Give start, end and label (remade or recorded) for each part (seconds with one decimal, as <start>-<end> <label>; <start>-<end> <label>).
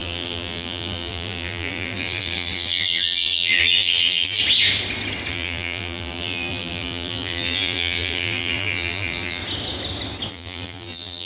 0.0-4.4 remade; 4.4-5.3 recorded; 5.3-9.4 remade; 9.4-10.3 recorded; 10.3-11.3 remade